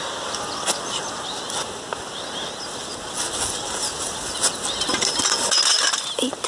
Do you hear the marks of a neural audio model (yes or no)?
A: no